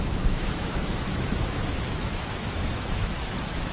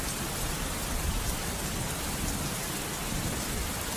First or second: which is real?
second